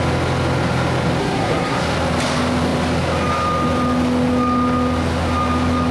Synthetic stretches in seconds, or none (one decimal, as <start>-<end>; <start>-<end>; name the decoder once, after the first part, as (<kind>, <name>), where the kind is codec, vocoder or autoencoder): 1.2-1.8 (codec, SNAC)

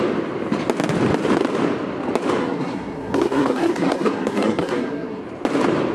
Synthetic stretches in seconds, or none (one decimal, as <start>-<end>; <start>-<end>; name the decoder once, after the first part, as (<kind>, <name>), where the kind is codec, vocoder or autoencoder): 2.4-5.2 (codec, SNAC)